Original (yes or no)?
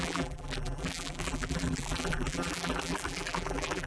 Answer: no